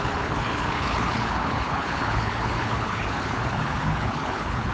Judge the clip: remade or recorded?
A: remade